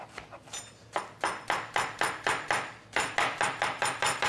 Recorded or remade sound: recorded